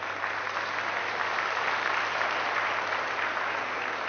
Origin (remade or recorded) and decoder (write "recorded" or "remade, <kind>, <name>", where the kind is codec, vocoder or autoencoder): recorded